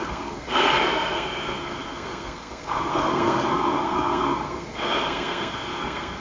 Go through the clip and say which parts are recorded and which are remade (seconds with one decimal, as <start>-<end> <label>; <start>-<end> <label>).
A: 0.0-6.2 remade